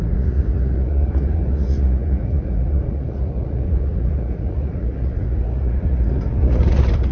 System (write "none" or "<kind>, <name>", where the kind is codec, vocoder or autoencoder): vocoder, Vocos